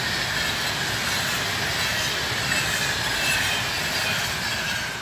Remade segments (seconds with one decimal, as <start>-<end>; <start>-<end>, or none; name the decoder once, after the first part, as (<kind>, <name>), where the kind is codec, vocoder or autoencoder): none